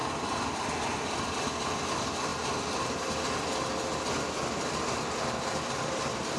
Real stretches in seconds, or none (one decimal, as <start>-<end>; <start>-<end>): 0.0-6.4